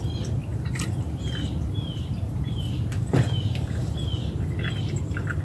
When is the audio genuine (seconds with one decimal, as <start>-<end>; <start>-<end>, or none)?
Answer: 0.0-0.5; 3.7-5.4